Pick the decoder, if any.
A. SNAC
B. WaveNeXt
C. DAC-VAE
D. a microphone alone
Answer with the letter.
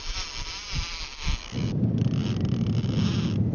D